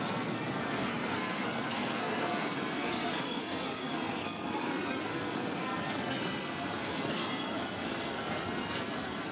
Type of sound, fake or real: fake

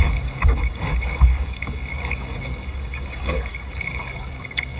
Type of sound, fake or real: fake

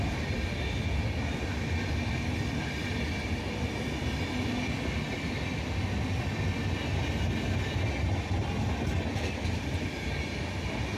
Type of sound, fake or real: real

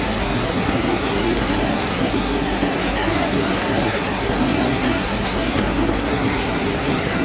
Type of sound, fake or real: fake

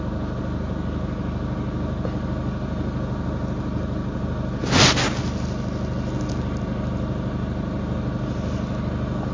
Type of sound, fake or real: real